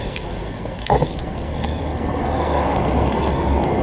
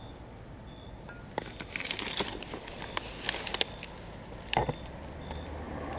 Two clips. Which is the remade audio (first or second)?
first